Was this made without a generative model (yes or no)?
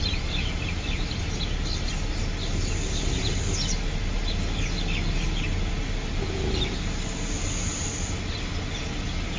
yes